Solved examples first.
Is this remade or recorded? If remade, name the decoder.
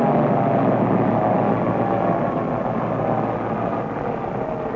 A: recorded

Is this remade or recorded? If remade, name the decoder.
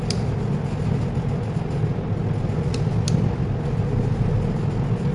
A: recorded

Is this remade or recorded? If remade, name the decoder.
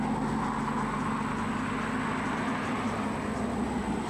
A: recorded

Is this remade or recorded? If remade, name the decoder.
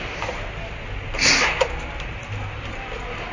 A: recorded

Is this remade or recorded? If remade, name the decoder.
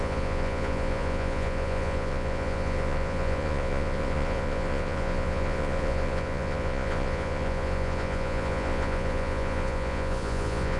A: remade, vocoder, Vocos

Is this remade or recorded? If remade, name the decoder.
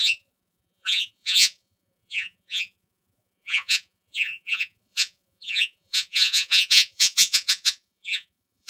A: remade, vocoder, Vocos